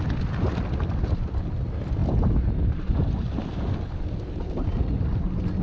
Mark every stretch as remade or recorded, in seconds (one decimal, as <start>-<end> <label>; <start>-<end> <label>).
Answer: 0.0-5.6 recorded